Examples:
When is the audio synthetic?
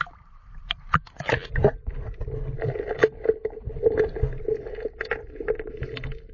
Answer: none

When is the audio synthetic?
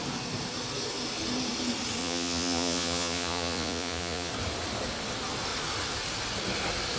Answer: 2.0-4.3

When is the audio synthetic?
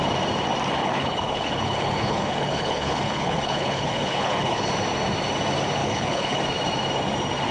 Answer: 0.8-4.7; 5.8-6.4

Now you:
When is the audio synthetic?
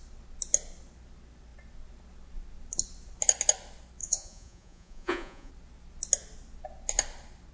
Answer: 4.0-5.5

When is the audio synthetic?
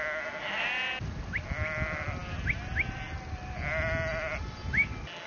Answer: none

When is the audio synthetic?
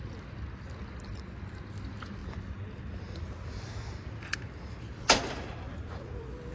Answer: none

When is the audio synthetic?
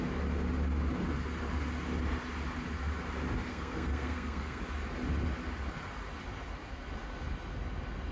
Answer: 3.5-4.6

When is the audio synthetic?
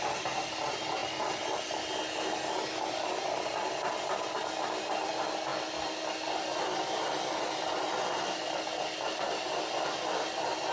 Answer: none